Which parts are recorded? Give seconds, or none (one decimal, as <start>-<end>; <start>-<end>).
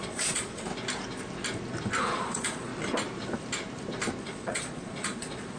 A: 0.7-2.0; 2.7-4.2